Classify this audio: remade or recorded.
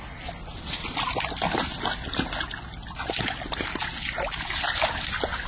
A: recorded